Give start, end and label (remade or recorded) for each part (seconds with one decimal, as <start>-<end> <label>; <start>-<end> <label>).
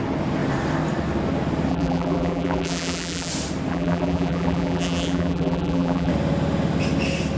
0.0-1.7 recorded; 1.7-3.3 remade; 3.3-3.7 recorded; 3.7-6.1 remade; 6.1-7.4 recorded